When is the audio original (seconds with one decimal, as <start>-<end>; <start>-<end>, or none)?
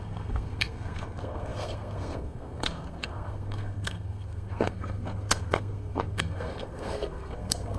none